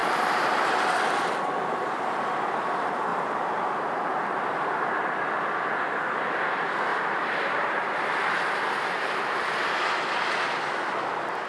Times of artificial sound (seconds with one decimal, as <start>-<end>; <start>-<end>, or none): 0.0-0.9; 3.1-4.8; 6.9-7.9